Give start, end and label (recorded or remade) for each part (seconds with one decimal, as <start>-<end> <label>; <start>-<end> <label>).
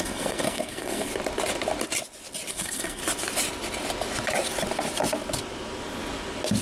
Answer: 0.0-1.1 remade; 1.1-2.5 recorded; 2.5-3.0 remade; 3.0-6.6 recorded